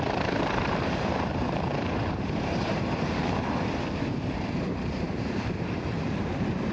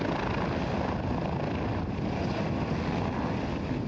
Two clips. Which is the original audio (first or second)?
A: second